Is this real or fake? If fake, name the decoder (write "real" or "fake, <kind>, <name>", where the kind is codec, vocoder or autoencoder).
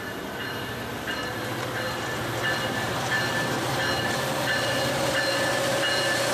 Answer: real